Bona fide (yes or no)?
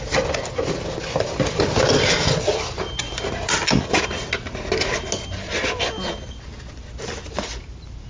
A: yes